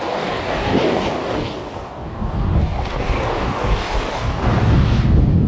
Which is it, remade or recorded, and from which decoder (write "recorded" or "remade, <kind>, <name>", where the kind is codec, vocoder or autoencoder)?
remade, codec, DAC